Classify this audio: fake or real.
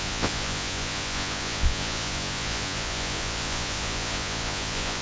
fake